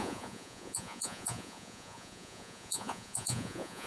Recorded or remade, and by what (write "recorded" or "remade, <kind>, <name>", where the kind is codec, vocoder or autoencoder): remade, vocoder, Vocos